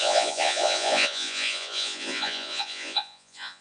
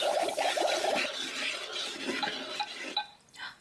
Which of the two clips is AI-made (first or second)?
first